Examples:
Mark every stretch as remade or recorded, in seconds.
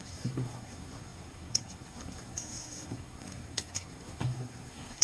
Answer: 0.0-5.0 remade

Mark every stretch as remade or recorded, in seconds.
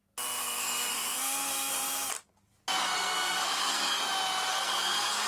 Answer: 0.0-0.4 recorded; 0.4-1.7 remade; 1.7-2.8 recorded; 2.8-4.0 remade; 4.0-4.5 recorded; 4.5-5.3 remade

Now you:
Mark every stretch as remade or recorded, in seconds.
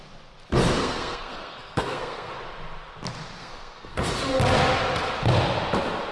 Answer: 0.0-0.8 recorded; 0.8-2.3 remade; 2.3-3.4 recorded; 3.4-4.0 remade; 4.0-6.1 recorded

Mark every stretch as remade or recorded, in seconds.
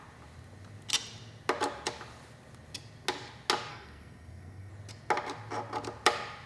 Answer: 0.0-3.7 recorded; 3.7-4.7 remade; 4.7-6.5 recorded